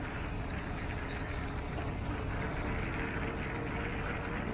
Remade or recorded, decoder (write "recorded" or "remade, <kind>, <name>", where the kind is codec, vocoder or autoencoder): recorded